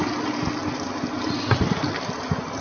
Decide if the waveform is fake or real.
real